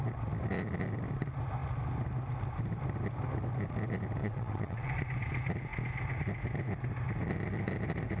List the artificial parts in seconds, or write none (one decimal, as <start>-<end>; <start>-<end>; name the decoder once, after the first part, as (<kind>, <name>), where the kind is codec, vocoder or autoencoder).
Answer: 4.2-4.9 (vocoder, WaveNeXt)